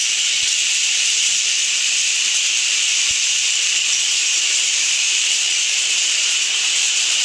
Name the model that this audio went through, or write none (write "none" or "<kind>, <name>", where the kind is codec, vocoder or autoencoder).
vocoder, BigVGAN v2